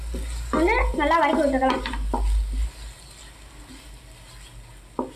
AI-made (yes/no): no